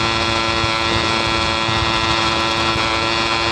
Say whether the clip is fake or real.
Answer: real